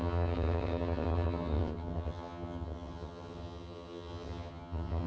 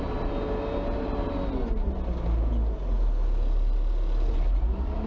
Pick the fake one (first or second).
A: first